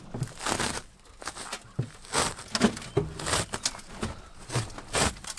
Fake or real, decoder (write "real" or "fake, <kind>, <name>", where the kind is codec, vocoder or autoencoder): real